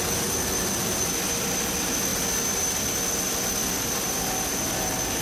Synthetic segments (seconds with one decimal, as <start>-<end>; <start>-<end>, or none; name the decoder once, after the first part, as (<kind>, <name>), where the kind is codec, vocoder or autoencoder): none